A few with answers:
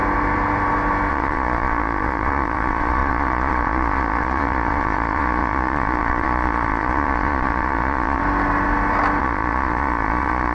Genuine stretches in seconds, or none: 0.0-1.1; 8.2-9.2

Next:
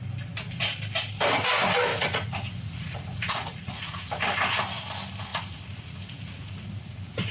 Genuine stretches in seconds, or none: 0.0-1.9; 4.2-5.3

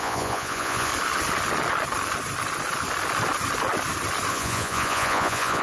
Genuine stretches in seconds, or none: 0.9-4.3

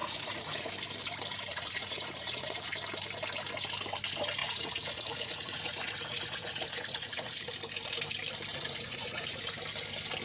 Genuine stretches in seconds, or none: 0.7-1.5; 2.7-4.4; 7.5-8.5; 9.4-10.2